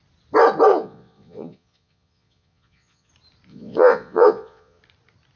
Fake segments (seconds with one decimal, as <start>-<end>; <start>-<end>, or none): 0.7-3.1; 3.5-4.8